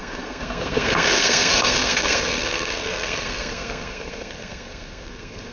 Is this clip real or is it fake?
fake